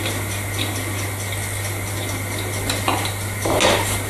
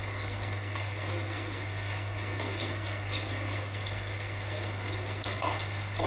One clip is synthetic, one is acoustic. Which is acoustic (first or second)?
first